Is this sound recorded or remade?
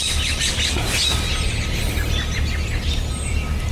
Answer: recorded